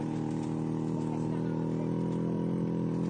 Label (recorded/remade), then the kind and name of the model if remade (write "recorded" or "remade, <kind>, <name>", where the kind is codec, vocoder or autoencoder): recorded